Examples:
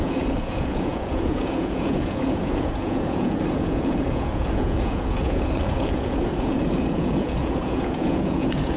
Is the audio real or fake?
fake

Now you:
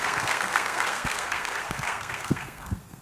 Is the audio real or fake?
fake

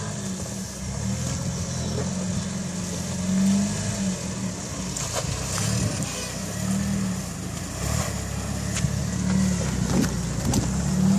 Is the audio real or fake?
real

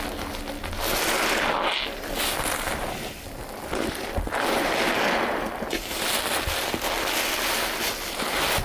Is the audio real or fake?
real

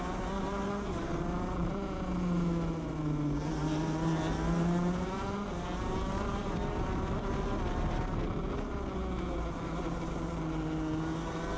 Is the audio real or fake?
real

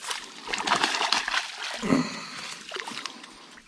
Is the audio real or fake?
real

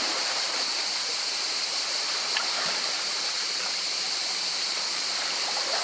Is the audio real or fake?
fake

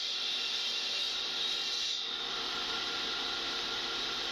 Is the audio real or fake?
fake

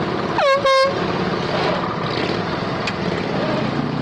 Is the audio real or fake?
real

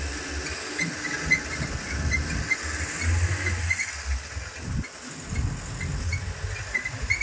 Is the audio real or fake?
real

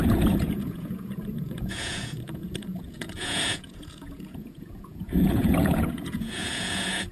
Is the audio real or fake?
fake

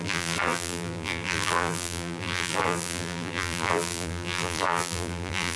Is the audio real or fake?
fake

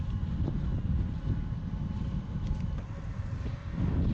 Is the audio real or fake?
real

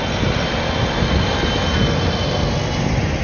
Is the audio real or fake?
real